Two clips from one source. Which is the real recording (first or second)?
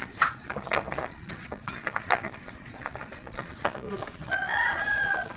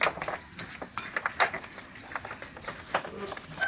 second